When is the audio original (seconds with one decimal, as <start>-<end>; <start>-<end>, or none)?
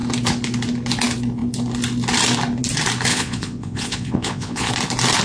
0.0-3.1; 4.7-5.2